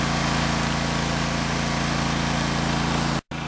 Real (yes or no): yes